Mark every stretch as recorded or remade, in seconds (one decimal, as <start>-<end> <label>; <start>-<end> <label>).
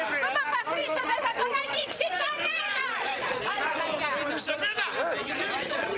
0.0-0.5 recorded; 0.5-3.8 remade; 3.8-5.2 recorded; 5.2-6.0 remade